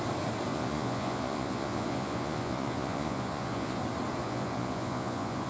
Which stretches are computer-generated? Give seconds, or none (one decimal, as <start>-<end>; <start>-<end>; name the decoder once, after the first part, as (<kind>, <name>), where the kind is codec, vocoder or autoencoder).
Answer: 0.5-3.8 (vocoder, Vocos); 4.2-5.5